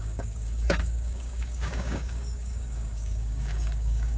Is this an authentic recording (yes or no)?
no